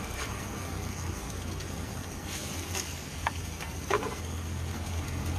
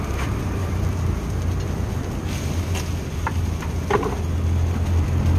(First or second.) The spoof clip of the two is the first